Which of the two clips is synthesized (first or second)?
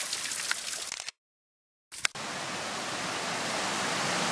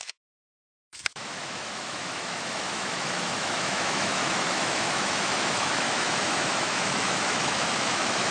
second